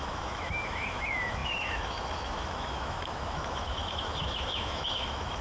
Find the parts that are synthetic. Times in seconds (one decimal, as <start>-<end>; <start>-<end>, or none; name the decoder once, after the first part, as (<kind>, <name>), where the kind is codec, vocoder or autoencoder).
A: 0.0-5.4 (autoencoder, DAC-VAE)

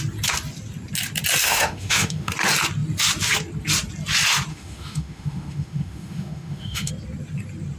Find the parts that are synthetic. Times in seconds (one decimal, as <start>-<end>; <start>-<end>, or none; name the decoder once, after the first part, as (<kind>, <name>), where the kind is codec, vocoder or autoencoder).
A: 1.4-2.3 (autoencoder, DAC-VAE); 4.5-6.9